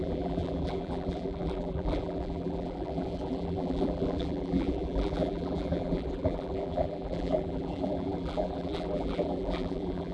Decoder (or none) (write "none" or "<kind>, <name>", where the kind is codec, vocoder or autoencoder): vocoder, BigVGAN v2